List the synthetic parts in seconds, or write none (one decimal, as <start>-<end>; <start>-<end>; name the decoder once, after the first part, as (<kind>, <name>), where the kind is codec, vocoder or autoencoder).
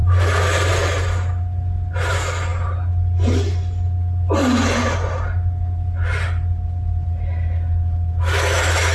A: none